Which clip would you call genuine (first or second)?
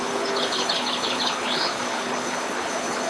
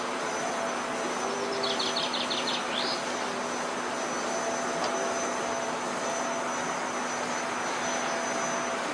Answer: second